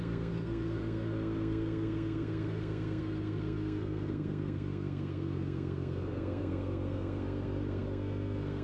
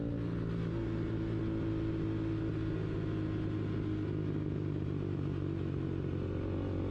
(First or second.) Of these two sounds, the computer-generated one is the first